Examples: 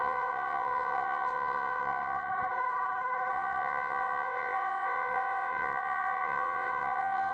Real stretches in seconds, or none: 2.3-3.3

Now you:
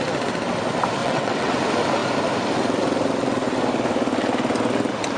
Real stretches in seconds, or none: 0.0-1.0; 1.6-5.2

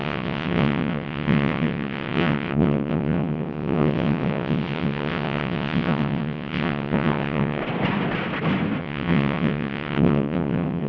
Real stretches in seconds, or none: 7.6-8.8

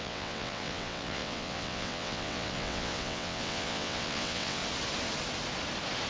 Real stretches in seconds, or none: 4.6-6.1

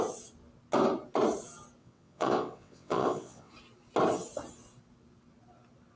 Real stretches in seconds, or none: 0.0-1.8; 3.5-6.0